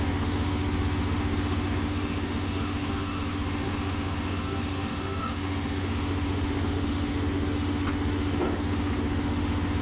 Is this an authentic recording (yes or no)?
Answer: no